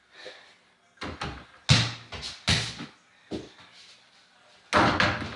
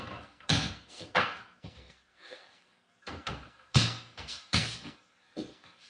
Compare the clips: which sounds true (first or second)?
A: first